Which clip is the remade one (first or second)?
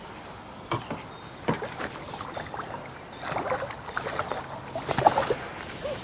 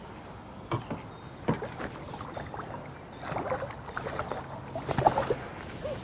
first